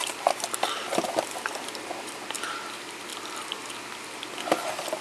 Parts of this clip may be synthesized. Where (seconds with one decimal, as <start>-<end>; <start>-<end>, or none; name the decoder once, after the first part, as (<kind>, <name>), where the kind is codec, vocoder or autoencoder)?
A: none